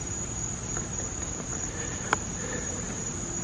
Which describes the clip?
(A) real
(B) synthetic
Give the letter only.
A